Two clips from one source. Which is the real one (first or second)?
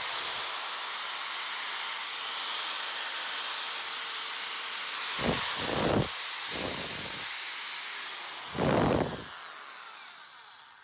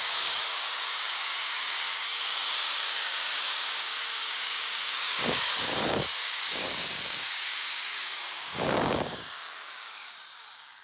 first